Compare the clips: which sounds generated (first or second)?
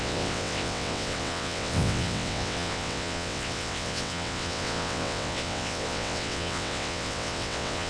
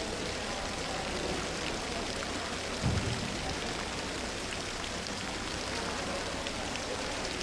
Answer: first